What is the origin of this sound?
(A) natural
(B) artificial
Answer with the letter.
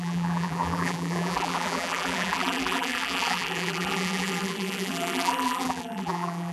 B